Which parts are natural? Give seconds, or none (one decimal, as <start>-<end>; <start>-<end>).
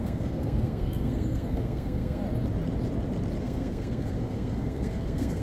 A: 2.2-3.4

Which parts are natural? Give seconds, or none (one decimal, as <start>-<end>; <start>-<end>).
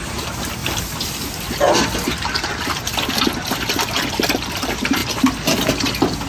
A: 0.0-6.3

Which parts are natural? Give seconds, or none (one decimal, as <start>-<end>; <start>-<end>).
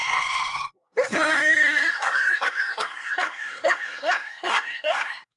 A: none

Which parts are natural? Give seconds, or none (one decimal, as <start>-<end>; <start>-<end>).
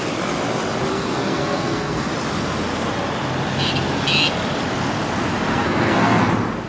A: 0.0-0.9; 2.1-5.5; 6.3-6.7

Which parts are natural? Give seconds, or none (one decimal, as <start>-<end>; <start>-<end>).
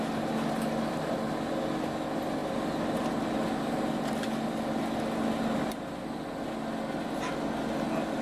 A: 0.0-8.2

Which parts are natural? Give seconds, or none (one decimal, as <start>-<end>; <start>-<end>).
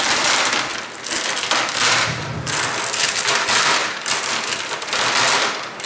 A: 0.7-1.7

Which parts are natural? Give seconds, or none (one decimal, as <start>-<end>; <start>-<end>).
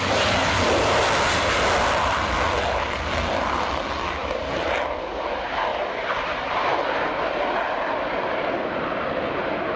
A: 0.0-9.8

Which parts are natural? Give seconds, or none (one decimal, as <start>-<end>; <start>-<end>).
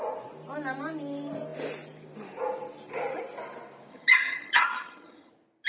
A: 0.0-3.9; 5.3-5.7